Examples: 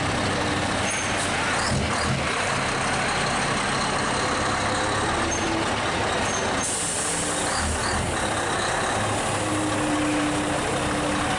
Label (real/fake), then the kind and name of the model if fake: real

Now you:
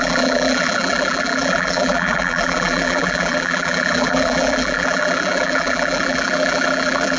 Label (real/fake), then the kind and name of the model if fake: fake, vocoder, BigVGAN v2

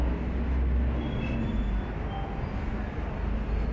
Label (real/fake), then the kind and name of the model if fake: real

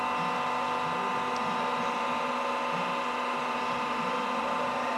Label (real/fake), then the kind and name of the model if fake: real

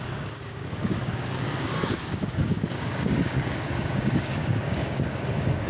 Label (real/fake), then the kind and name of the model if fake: fake, codec, DAC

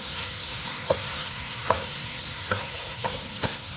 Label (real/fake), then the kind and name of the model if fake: fake, codec, SNAC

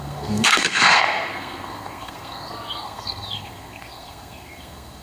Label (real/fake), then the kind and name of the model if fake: fake, codec, SNAC